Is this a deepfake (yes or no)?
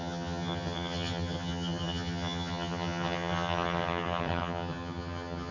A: yes